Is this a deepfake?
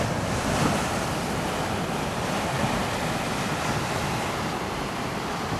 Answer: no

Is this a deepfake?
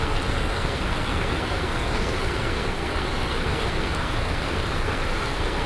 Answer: yes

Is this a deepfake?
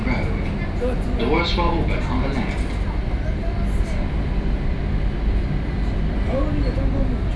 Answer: no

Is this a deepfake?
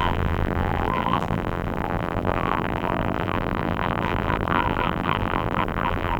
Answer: yes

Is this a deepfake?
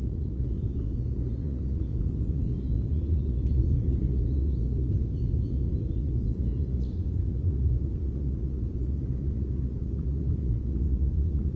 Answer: yes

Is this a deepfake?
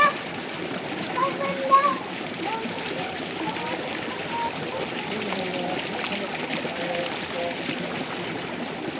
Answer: yes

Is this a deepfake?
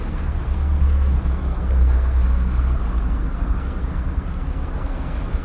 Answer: yes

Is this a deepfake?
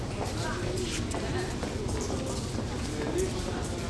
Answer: no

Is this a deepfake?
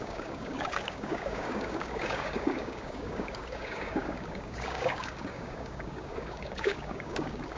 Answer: yes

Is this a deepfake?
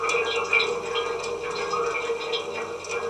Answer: no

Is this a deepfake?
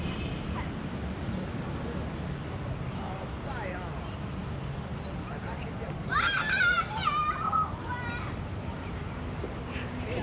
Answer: no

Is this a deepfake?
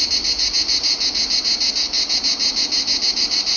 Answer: no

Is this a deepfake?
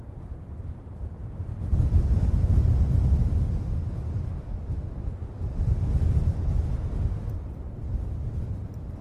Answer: no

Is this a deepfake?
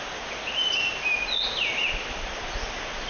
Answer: no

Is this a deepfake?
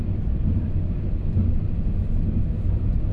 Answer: no